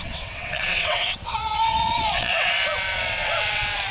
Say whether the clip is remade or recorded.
remade